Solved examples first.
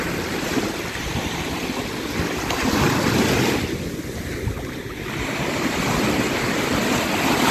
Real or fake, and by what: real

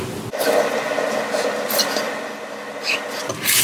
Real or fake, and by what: real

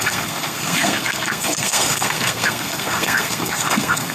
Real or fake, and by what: fake, codec, SNAC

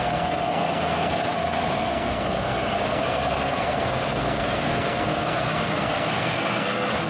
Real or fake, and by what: fake, codec, SNAC